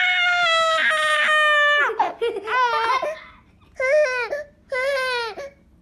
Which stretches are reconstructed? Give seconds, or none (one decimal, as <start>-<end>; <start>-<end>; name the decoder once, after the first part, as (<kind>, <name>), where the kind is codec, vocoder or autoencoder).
none